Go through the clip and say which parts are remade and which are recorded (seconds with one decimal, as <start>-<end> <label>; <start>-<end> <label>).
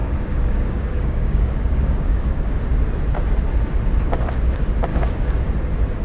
0.0-2.5 remade; 2.5-4.9 recorded; 4.9-5.5 remade; 5.5-6.0 recorded